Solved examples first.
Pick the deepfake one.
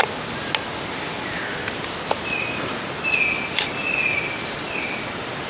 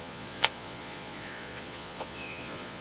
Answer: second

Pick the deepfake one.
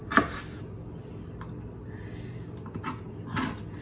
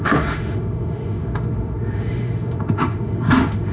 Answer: second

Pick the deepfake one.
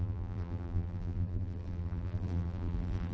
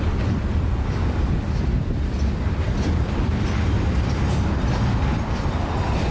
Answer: first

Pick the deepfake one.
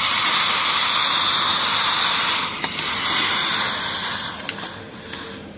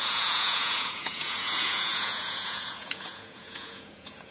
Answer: second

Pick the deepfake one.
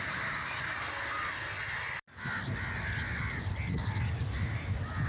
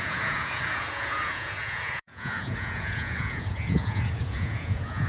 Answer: second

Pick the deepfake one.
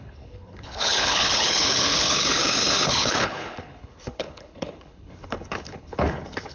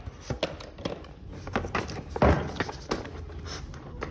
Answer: first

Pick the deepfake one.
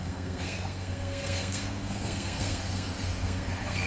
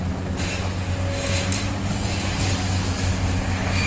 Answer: first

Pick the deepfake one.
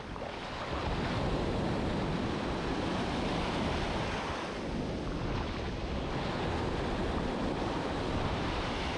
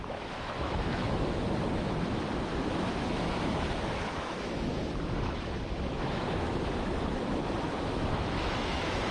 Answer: second